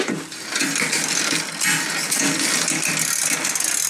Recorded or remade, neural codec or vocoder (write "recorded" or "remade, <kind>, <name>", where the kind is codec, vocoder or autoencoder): recorded